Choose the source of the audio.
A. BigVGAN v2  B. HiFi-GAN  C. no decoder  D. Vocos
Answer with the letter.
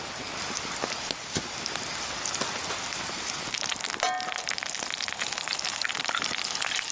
C